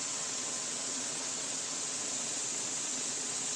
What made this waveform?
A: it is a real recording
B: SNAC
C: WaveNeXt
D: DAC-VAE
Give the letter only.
C